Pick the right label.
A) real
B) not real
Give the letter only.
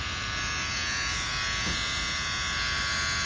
B